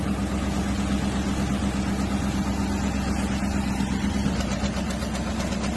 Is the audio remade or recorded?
recorded